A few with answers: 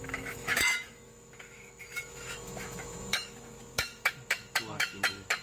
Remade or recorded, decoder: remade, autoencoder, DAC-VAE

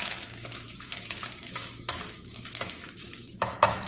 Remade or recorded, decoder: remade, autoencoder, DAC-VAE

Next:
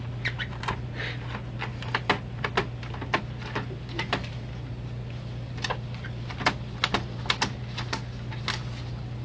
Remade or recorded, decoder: recorded